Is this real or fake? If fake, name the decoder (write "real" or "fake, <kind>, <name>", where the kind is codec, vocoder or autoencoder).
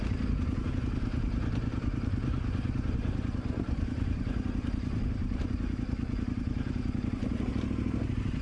real